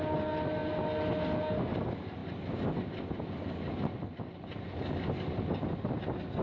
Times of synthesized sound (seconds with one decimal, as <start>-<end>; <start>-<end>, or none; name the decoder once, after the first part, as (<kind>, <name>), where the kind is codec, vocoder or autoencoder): none